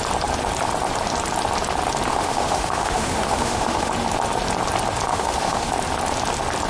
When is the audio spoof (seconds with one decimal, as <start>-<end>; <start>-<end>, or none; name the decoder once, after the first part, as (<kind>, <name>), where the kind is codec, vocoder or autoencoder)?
2.1-3.9 (autoencoder, DAC-VAE); 5.1-5.7